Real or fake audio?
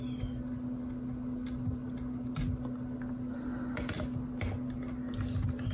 real